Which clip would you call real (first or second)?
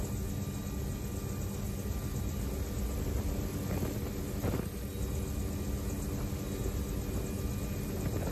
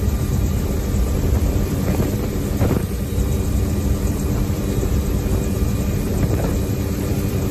first